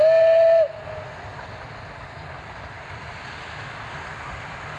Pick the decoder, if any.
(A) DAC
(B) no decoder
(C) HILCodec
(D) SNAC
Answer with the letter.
B